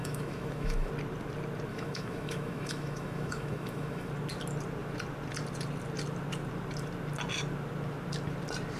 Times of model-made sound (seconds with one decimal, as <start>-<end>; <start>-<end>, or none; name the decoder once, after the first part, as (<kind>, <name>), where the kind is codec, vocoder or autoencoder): 0.0-0.9 (autoencoder, DAC-VAE); 1.7-4.1